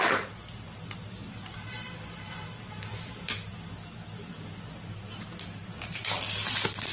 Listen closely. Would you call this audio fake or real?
fake